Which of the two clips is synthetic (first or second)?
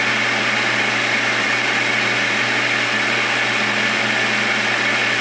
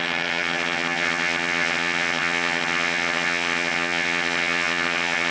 second